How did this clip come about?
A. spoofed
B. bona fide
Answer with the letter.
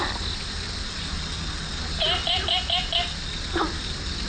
B